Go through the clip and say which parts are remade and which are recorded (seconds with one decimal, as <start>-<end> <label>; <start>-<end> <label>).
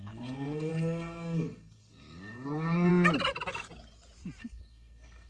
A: 0.0-2.9 remade; 2.9-4.4 recorded; 4.4-5.3 remade